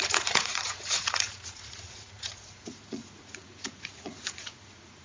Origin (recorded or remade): remade